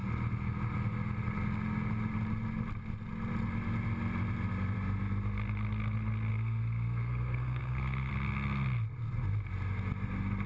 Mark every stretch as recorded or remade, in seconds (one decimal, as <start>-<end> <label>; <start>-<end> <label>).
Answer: 0.0-6.3 recorded; 6.3-8.1 remade; 8.1-10.5 recorded